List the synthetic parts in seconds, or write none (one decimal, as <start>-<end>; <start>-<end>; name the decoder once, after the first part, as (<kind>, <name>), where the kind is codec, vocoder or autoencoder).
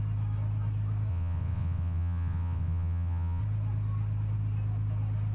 1.1-3.4 (vocoder, WaveNeXt)